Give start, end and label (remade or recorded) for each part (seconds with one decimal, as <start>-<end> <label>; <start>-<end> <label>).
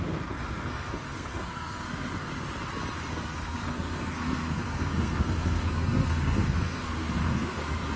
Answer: 0.0-2.3 remade; 2.3-3.1 recorded; 3.1-8.0 remade